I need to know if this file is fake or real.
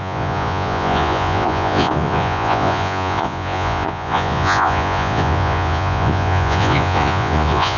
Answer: fake